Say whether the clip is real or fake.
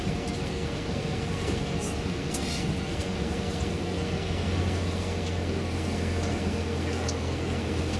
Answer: fake